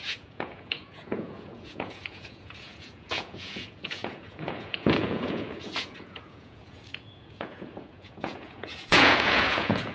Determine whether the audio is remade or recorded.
remade